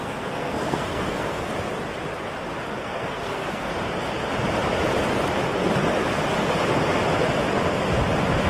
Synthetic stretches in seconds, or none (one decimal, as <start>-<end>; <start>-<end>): 0.0-1.5; 2.7-3.7